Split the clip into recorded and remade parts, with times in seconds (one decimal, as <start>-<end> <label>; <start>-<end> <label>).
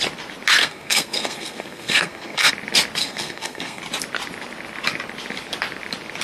0.0-0.6 recorded; 0.6-2.5 remade; 2.5-3.0 recorded; 3.0-3.8 remade; 3.8-6.2 recorded